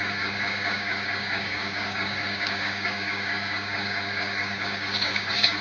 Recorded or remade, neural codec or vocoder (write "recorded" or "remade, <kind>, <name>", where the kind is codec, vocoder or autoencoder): remade, codec, DAC